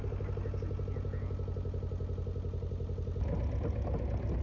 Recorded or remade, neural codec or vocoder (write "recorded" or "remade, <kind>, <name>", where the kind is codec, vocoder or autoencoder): recorded